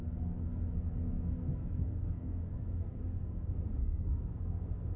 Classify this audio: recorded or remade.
remade